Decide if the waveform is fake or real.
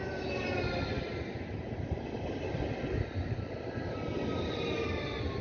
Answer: real